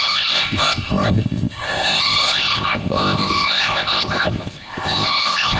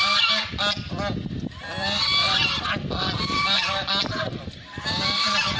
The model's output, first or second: first